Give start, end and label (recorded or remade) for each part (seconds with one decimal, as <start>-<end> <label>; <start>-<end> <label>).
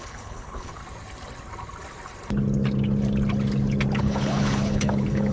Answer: 0.0-0.8 remade; 0.8-4.0 recorded; 4.0-5.3 remade